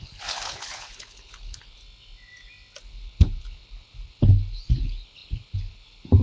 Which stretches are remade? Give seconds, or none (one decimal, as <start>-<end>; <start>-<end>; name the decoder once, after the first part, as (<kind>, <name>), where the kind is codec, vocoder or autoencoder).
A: 0.0-1.8 (codec, HILCodec); 2.8-6.2